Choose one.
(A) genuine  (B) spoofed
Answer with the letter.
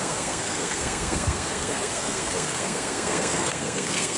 B